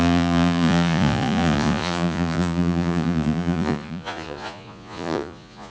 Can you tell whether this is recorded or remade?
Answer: remade